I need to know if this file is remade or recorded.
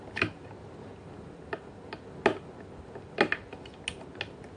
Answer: recorded